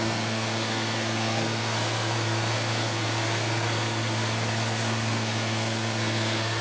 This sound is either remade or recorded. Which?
remade